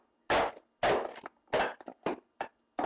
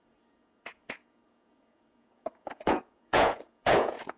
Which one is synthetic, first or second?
second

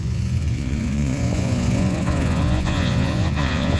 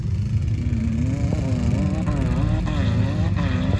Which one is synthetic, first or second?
first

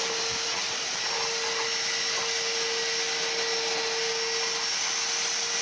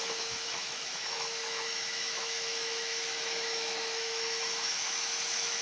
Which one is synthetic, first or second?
second